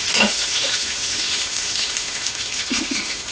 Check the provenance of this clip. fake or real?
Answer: fake